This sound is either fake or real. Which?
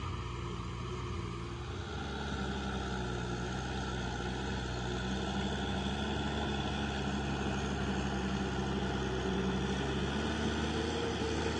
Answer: real